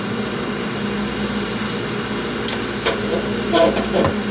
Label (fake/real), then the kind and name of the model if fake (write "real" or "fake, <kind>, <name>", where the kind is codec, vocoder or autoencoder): real